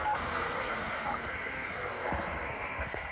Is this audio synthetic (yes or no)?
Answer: yes